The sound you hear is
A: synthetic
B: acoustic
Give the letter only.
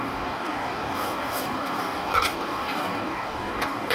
A